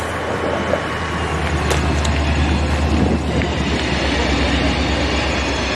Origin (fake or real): real